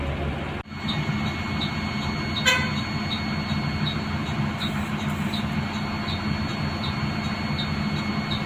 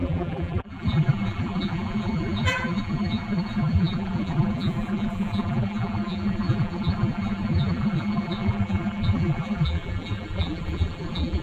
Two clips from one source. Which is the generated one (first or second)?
second